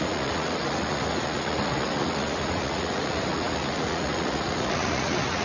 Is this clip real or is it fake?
fake